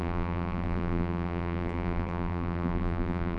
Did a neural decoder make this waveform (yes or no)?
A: yes